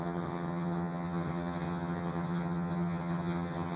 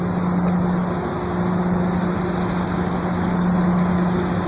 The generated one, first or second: first